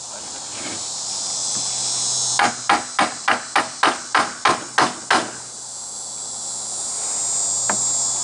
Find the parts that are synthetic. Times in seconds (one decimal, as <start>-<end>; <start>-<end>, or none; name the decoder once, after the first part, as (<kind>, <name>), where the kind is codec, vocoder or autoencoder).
none